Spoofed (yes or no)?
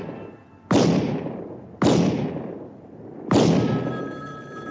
no